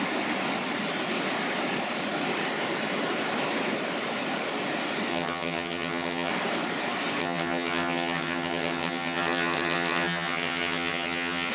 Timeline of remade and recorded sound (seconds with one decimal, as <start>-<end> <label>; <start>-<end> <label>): 0.0-5.1 recorded; 5.1-6.3 remade; 6.3-7.2 recorded; 7.2-11.5 remade